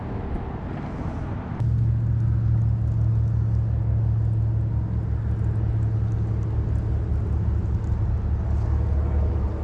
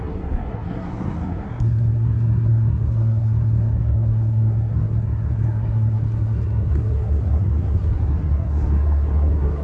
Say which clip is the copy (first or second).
second